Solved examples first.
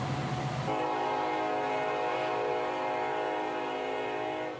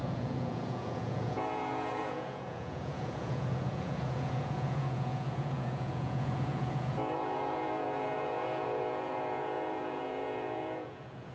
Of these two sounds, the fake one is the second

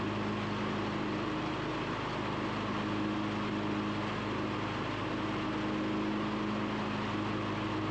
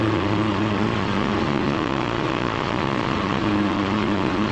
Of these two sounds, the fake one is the second